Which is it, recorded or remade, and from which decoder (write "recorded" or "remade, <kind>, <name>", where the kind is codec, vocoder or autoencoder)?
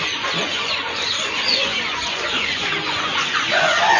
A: remade, vocoder, Vocos